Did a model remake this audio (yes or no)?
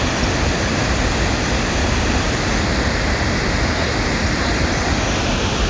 no